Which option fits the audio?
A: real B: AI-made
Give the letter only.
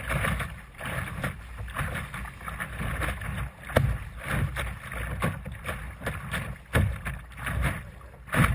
A